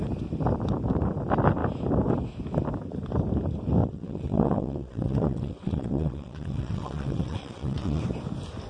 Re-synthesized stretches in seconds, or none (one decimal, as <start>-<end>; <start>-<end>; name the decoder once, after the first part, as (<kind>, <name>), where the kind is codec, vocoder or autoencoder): 3.8-8.0 (vocoder, WaveNeXt)